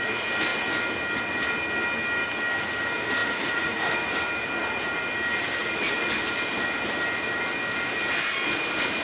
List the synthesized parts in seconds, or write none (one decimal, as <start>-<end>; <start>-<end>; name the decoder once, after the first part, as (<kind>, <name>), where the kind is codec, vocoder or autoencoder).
3.2-3.9 (vocoder, Vocos)